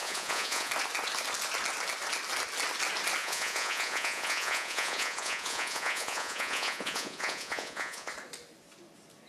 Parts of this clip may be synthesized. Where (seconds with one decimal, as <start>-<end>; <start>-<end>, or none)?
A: 0.0-0.7; 3.2-8.1